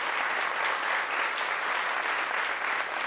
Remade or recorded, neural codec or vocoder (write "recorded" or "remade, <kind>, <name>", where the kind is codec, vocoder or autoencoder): recorded